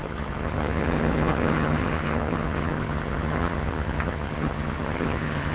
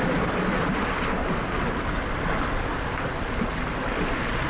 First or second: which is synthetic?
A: first